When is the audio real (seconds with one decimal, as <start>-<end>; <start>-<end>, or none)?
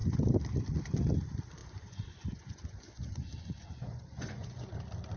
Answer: 0.0-1.6; 4.7-5.2